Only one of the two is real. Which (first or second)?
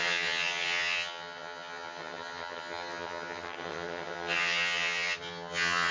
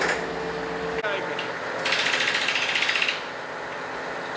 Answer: second